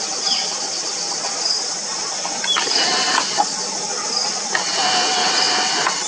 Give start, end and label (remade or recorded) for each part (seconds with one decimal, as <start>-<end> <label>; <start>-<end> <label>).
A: 0.0-6.1 recorded